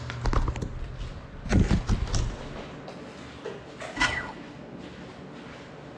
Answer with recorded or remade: recorded